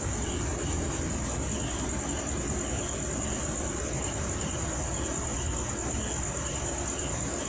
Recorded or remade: recorded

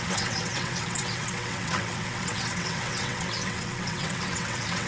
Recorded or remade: remade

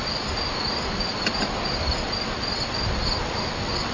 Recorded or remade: recorded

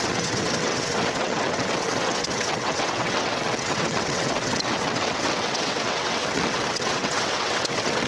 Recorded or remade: remade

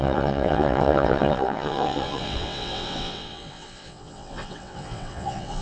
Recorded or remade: remade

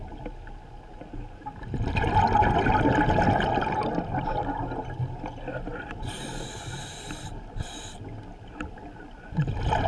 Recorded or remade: recorded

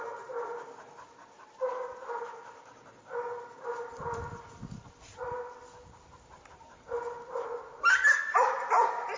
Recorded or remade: recorded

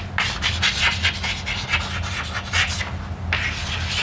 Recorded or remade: recorded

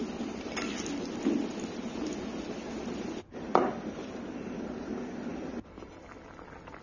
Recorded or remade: recorded